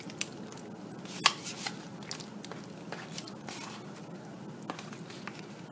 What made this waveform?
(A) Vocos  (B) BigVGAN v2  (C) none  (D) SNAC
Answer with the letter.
C